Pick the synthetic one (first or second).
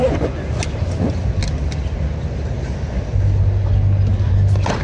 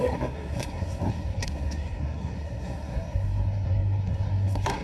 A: second